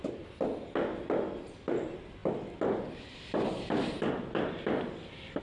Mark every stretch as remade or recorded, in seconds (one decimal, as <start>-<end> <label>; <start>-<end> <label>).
0.0-5.4 recorded